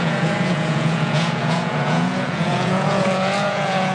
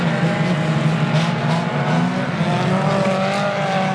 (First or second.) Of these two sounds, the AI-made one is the first